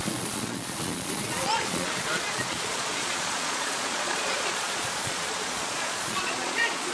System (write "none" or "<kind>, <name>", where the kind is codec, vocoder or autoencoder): vocoder, Vocos